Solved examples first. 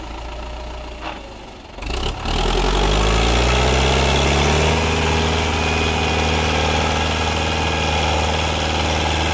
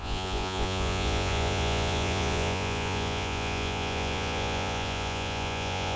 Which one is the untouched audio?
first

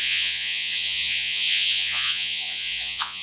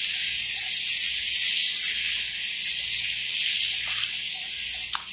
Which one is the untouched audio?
second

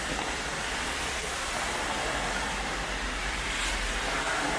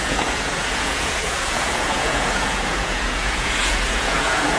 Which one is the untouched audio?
first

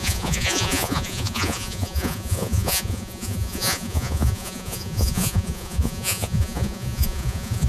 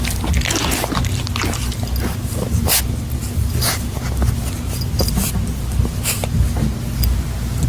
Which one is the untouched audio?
second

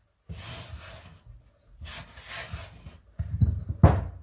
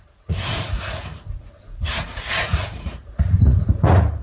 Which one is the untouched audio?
first